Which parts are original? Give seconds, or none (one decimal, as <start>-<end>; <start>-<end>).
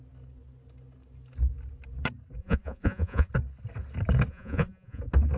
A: 0.0-2.4; 3.3-4.3; 5.0-5.4